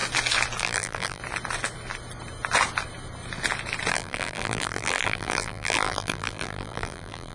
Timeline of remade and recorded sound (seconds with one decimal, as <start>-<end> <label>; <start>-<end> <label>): 0.0-0.6 recorded; 0.6-1.2 remade; 1.2-3.9 recorded; 3.9-7.3 remade